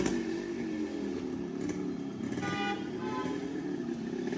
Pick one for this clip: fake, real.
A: real